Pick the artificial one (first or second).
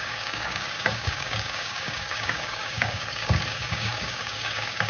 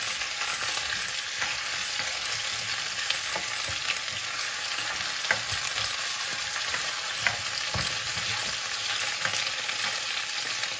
first